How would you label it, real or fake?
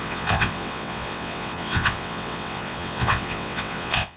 fake